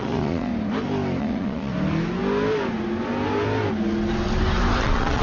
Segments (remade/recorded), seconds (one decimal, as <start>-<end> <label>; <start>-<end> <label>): 0.0-0.5 remade; 0.5-1.2 recorded; 1.2-1.7 remade; 1.7-4.8 recorded; 4.8-5.2 remade